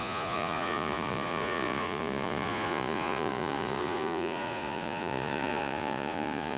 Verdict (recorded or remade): remade